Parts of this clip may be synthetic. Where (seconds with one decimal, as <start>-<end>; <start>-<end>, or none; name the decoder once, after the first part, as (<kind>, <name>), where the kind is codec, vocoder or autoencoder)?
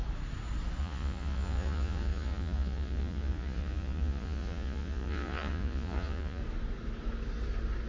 0.8-6.4 (vocoder, Vocos)